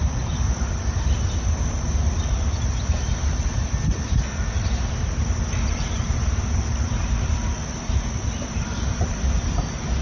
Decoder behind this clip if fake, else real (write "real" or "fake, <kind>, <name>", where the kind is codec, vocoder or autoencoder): real